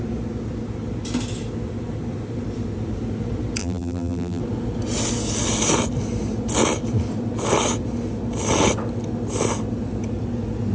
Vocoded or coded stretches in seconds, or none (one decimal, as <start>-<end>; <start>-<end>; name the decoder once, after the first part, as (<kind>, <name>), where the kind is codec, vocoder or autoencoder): 3.6-4.4 (vocoder, BigVGAN v2)